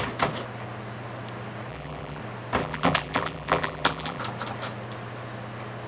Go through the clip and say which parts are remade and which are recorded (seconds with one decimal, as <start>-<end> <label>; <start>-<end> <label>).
0.0-1.7 recorded; 1.7-2.2 remade; 2.2-2.6 recorded; 2.6-4.2 remade; 4.2-5.9 recorded

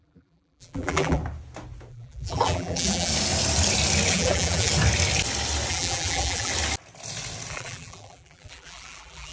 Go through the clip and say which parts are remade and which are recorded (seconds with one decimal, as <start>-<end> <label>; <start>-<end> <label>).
0.0-1.2 remade; 1.2-1.9 recorded; 1.9-3.1 remade; 3.1-4.1 recorded; 4.1-4.7 remade; 4.7-5.7 recorded; 5.7-6.5 remade; 6.5-7.5 recorded; 7.5-9.3 remade

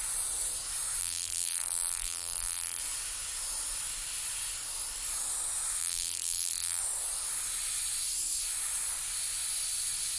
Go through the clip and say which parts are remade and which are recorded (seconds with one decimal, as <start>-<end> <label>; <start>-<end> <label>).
0.0-1.0 recorded; 1.0-2.8 remade; 2.8-5.8 recorded; 5.8-6.8 remade; 6.8-10.2 recorded

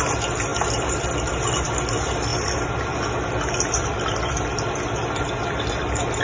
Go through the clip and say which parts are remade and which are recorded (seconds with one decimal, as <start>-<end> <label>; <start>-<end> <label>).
0.0-0.5 recorded; 0.5-1.7 remade; 1.7-6.2 recorded

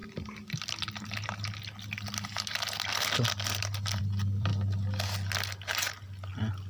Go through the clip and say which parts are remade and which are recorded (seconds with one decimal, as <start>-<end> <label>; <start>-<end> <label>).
0.0-4.0 recorded; 4.0-4.5 remade; 4.5-6.7 recorded

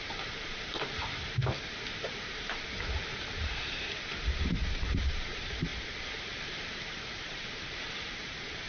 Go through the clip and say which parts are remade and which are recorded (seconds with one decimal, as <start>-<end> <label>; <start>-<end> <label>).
0.0-5.7 remade; 5.7-6.2 recorded; 6.2-8.7 remade